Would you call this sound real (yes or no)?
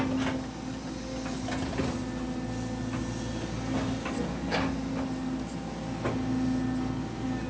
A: yes